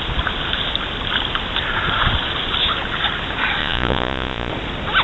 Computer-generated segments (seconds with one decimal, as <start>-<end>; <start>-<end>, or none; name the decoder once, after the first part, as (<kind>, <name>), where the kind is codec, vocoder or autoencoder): 3.6-4.5 (vocoder, Vocos)